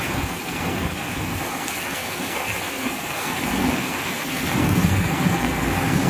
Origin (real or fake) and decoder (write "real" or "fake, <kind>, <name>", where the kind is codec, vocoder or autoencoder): fake, codec, SNAC